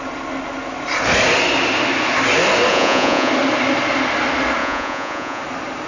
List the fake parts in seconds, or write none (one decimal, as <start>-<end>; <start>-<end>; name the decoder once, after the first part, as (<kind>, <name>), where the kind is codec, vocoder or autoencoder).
2.7-3.3 (vocoder, Vocos); 4.6-5.4